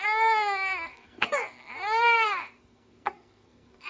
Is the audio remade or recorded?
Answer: remade